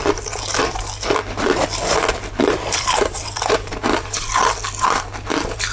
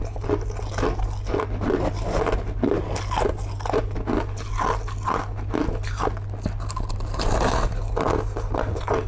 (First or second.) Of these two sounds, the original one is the second